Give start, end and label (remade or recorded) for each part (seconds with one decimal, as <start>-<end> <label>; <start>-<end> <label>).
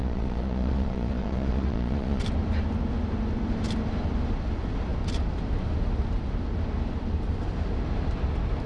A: 0.0-2.2 remade; 2.2-8.7 recorded